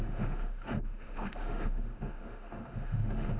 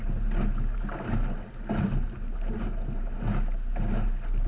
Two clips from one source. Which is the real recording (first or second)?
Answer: second